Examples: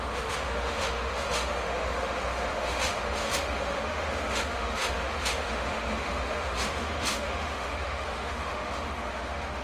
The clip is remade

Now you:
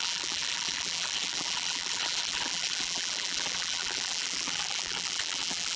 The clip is remade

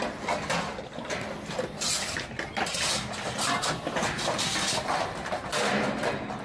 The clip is recorded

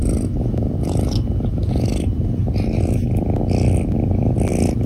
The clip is recorded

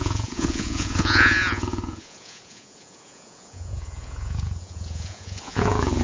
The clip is remade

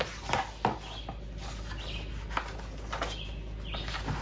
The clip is recorded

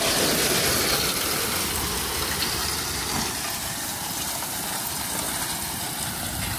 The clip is recorded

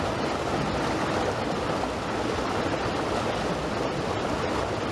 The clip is recorded